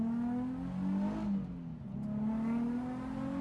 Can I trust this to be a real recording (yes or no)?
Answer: yes